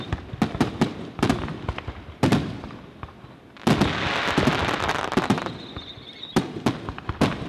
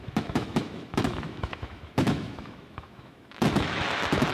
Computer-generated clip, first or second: second